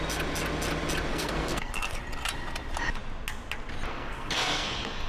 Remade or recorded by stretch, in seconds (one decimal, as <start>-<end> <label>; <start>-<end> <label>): 0.0-1.1 recorded; 1.1-2.0 remade; 2.0-3.9 recorded; 3.9-5.1 remade